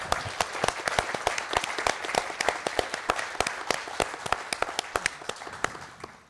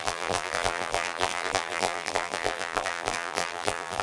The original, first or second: first